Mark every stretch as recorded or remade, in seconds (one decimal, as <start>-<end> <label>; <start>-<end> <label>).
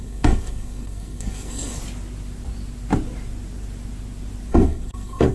0.0-1.8 remade; 1.8-4.5 recorded; 4.5-5.3 remade